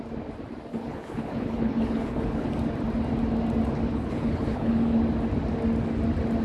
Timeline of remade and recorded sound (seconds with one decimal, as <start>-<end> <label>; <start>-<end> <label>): 0.0-0.7 recorded; 0.7-2.5 remade; 2.5-3.9 recorded; 3.9-5.0 remade; 5.0-6.4 recorded